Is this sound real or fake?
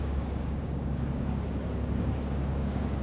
fake